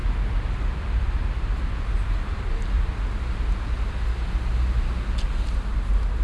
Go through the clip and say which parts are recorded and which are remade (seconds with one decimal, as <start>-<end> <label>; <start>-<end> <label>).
0.0-6.2 recorded